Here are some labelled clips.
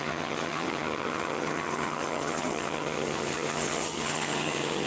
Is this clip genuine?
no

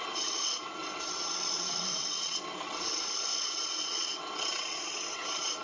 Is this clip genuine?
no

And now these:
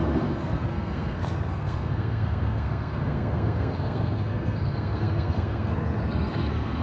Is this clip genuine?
no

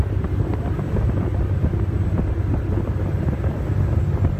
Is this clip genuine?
yes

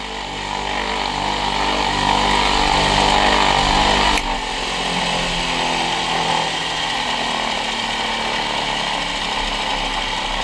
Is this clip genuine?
yes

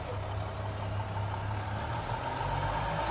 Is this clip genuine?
yes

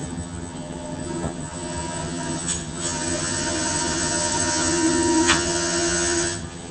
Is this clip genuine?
no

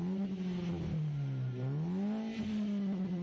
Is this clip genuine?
yes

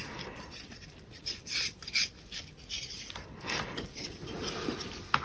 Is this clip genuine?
yes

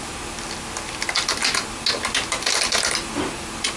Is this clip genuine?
yes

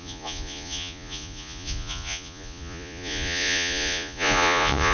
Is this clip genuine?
no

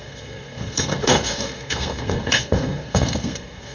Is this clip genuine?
no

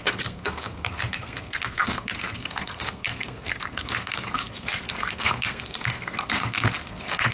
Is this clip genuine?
no